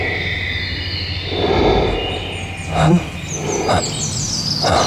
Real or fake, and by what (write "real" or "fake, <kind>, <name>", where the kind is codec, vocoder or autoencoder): real